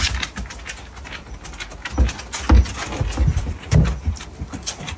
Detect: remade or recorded recorded